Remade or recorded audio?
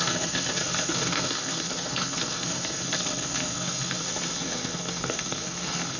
remade